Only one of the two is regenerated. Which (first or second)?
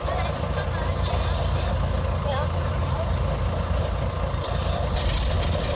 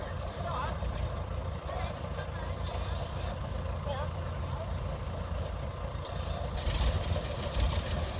second